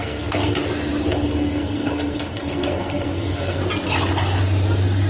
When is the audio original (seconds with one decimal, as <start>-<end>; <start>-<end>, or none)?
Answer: 0.6-1.1; 3.6-5.1